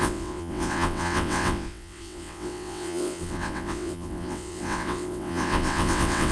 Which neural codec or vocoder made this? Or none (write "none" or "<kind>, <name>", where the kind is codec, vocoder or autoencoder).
vocoder, WaveNeXt